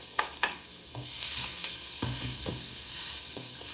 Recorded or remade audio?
remade